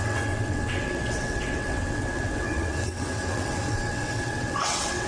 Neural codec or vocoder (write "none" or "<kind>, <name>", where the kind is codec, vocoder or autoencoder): vocoder, WaveNeXt